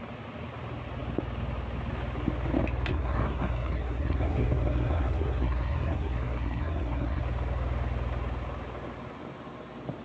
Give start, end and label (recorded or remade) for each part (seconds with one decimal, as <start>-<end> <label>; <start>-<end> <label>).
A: 0.0-2.9 recorded; 2.9-7.2 remade; 7.2-10.0 recorded